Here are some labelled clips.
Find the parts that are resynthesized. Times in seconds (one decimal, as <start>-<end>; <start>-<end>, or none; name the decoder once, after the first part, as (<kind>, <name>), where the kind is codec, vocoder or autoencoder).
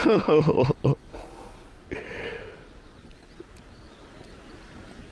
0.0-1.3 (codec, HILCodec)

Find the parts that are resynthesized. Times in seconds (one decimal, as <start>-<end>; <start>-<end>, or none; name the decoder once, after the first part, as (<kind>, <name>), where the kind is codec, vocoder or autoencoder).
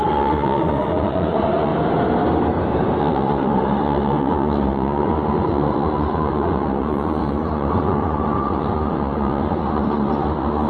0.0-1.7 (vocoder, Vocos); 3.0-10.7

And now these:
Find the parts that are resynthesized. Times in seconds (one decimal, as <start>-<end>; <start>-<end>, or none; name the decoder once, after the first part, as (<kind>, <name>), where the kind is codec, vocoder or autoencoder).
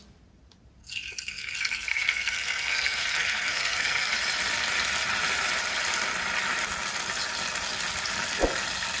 0.8-4.1 (codec, SNAC)